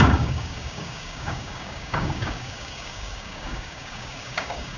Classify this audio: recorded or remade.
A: remade